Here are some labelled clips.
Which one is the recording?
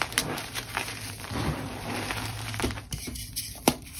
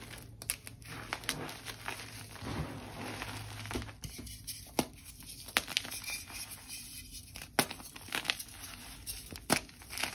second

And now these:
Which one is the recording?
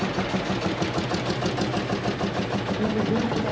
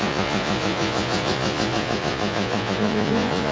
first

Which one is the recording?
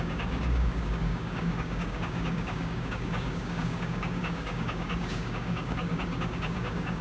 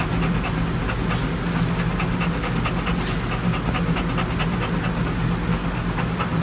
second